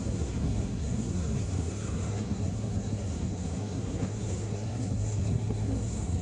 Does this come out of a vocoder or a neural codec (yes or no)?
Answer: yes